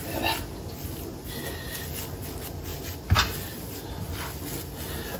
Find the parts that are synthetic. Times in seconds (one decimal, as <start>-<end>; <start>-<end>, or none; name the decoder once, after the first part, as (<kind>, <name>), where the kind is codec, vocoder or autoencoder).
none

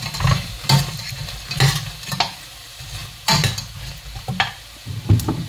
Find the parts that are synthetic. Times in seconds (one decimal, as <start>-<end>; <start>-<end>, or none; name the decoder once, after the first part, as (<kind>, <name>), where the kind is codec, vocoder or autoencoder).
none

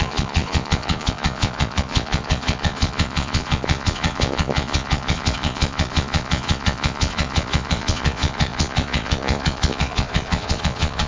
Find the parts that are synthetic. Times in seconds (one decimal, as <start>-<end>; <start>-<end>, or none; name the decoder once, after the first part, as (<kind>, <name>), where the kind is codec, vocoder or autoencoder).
0.0-11.1 (vocoder, Vocos)